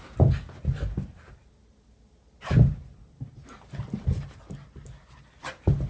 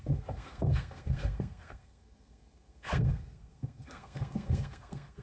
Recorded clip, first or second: first